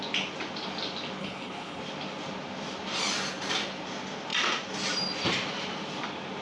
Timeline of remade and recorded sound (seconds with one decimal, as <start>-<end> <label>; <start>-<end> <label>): 0.0-1.2 recorded; 1.2-1.8 remade; 1.8-6.4 recorded